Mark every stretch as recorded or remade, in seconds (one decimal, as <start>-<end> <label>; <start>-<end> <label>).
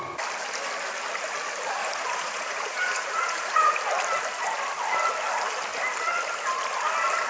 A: 0.0-1.8 recorded; 1.8-3.7 remade; 3.7-7.3 recorded